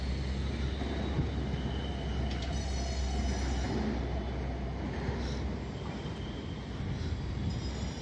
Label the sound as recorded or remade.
recorded